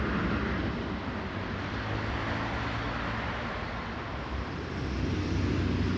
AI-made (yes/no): no